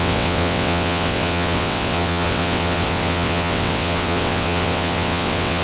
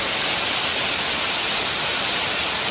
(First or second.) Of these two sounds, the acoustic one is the second